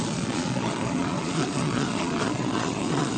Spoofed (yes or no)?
yes